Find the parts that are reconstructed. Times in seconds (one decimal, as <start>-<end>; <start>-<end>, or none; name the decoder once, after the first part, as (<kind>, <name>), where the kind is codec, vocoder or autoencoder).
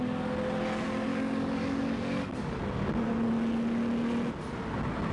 1.1-2.6 (codec, DAC)